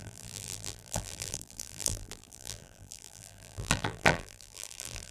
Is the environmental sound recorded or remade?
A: remade